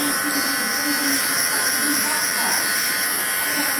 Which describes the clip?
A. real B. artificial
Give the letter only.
B